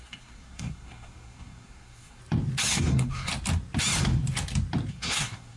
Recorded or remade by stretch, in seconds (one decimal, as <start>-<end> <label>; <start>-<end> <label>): 0.0-2.2 remade; 2.2-2.7 recorded; 2.7-3.3 remade; 3.3-4.9 recorded; 4.9-5.6 remade